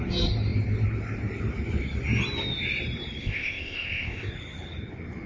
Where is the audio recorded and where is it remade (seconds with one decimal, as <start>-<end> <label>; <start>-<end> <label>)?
0.0-3.2 recorded; 3.2-4.3 remade; 4.3-5.3 recorded